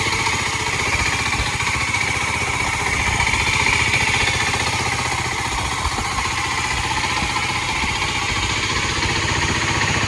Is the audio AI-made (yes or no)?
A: no